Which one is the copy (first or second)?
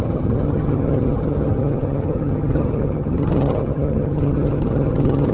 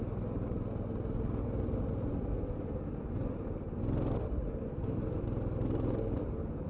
first